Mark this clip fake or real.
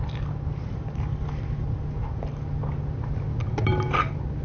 fake